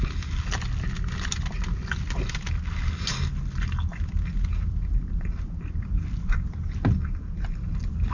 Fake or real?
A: real